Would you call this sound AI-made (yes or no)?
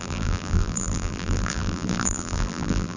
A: yes